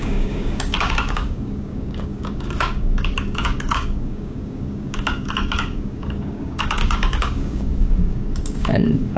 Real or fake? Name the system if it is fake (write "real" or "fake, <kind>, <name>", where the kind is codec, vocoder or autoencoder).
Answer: fake, codec, DAC